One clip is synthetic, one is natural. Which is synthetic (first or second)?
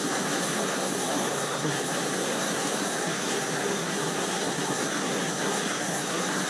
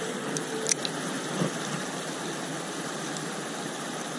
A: first